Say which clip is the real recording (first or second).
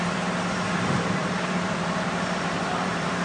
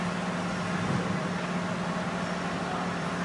second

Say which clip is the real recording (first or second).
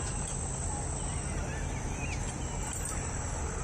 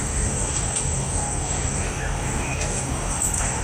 first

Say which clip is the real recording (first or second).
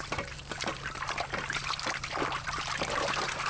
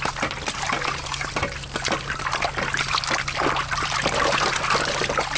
second